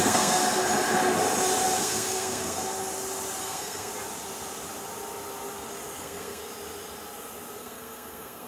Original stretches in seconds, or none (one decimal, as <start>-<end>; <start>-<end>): 0.4-1.8; 2.6-3.4; 3.9-6.0; 6.4-7.6